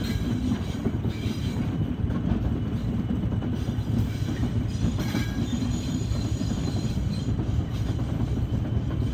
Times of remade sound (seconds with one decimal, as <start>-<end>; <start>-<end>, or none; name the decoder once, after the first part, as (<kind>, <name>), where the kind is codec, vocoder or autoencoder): 4.4-8.6 (vocoder, BigVGAN v2)